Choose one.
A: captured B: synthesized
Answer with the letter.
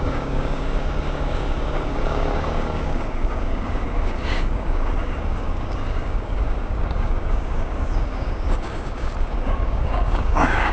B